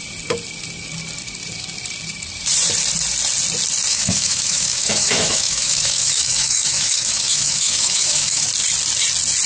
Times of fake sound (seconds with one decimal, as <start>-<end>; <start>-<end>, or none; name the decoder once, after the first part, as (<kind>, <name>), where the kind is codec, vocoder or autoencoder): 3.9-8.5 (autoencoder, DAC-VAE)